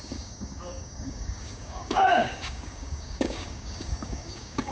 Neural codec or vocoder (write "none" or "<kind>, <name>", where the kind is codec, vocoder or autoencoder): codec, DAC